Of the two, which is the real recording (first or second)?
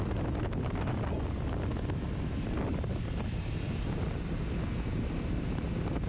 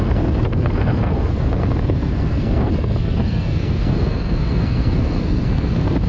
first